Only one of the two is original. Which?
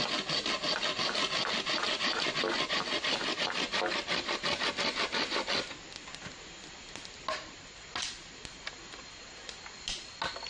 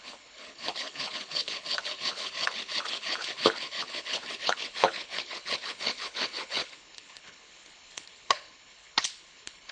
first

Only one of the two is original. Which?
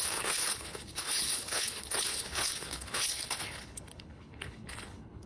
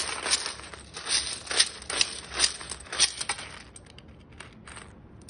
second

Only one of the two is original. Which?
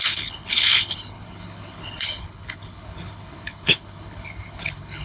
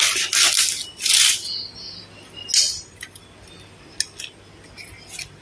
second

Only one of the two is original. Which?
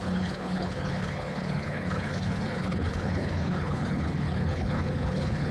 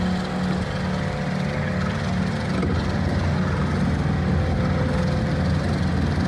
second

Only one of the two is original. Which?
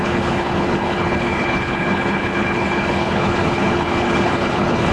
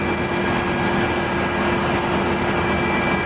second